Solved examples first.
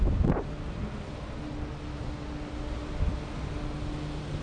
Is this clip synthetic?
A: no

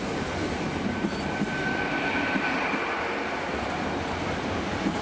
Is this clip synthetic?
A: no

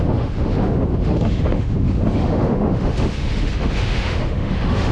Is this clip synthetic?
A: yes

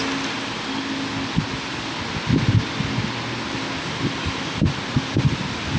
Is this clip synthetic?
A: no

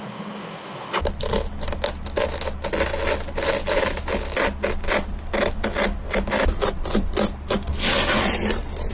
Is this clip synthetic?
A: no